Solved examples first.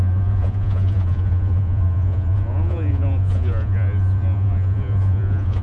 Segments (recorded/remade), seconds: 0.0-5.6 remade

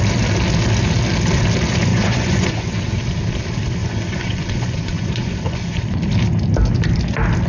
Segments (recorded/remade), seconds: 0.0-1.9 recorded; 1.9-2.8 remade; 2.8-3.8 recorded; 3.8-5.8 remade; 5.8-7.5 recorded

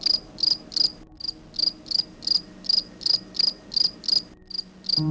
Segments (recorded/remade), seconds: 0.0-5.1 recorded

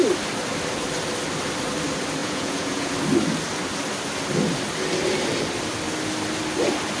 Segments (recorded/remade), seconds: 0.0-2.2 recorded; 2.2-2.9 remade; 2.9-7.0 recorded